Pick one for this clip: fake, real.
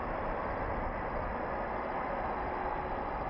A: real